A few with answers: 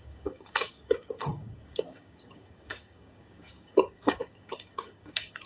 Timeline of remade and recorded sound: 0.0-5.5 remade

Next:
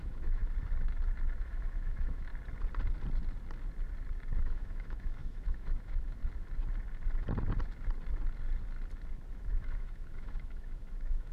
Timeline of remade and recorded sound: 0.0-0.4 remade; 0.4-1.3 recorded; 1.3-2.3 remade; 2.3-4.4 recorded; 4.4-6.2 remade; 6.2-9.3 recorded; 9.3-11.3 remade

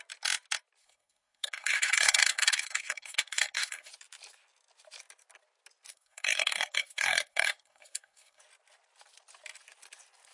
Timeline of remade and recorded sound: 0.0-0.8 recorded; 0.8-3.9 remade; 3.9-5.9 recorded; 5.9-8.4 remade; 8.4-10.3 recorded

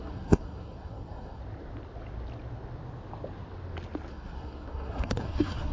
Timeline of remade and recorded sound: 0.0-1.4 remade; 1.4-4.1 recorded; 4.1-5.7 remade

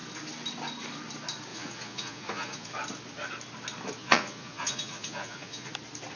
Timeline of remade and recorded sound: 0.0-1.5 recorded; 1.5-2.7 remade; 2.7-4.0 recorded; 4.0-5.7 remade; 5.7-6.2 recorded

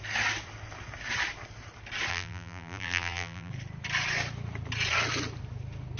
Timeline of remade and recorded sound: 0.0-2.1 recorded; 2.1-3.5 remade; 3.5-6.0 recorded

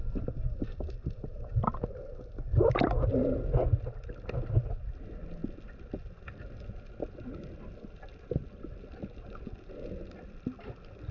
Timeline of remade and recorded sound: 0.0-11.1 recorded